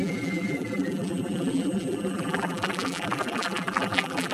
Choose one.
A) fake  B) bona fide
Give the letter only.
A